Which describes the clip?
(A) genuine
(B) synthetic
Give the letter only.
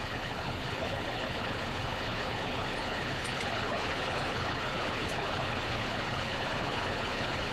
B